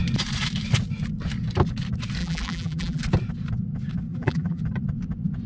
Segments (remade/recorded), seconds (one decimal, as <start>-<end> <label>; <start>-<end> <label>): 0.0-2.2 recorded; 2.2-3.0 remade; 3.0-4.1 recorded; 4.1-4.6 remade; 4.6-5.5 recorded